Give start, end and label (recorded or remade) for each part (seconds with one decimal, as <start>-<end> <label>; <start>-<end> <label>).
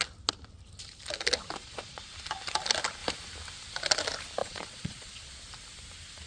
0.0-1.6 recorded; 1.6-2.1 remade; 2.1-4.4 recorded; 4.4-5.4 remade; 5.4-6.3 recorded